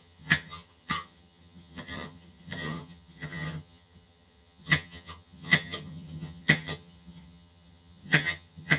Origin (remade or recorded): remade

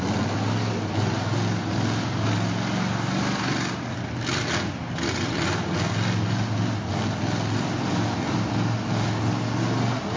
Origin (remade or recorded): recorded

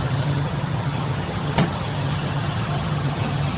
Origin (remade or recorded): remade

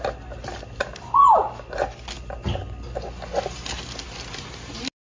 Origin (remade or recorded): recorded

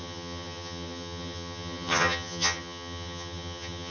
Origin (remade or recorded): remade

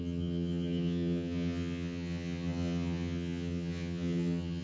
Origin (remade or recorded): remade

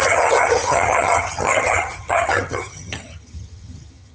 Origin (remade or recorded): remade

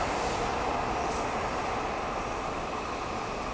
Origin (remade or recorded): recorded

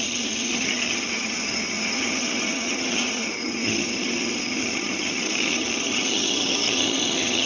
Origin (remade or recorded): remade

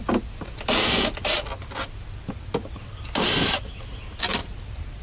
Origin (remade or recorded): recorded